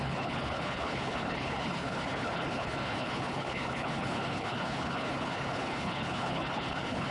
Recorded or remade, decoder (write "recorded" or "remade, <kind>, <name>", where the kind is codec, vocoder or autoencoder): remade, codec, HILCodec